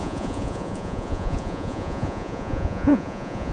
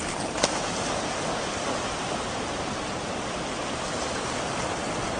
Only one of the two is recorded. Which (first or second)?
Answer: second